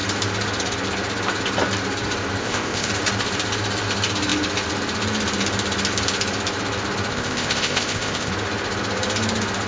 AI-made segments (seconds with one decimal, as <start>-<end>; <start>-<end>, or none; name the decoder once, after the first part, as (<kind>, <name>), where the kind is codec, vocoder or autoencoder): 2.4-2.9 (codec, ZipCodec); 7.1-8.3